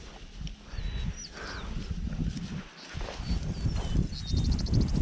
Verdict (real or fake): real